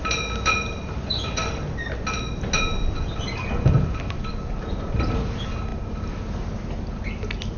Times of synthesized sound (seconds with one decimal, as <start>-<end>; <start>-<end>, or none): none